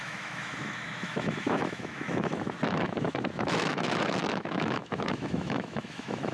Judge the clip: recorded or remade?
remade